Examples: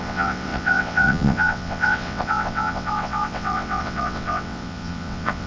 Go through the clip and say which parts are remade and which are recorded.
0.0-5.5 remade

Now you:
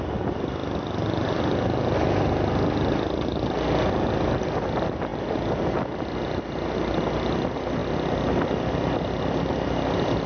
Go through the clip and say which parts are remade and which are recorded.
0.0-10.3 recorded

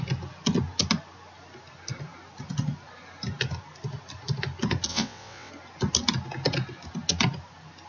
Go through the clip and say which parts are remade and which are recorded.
0.0-4.9 recorded; 4.9-5.5 remade; 5.5-7.9 recorded